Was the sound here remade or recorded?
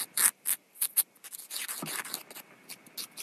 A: recorded